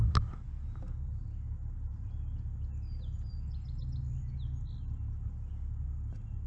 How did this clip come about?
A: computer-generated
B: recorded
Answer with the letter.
B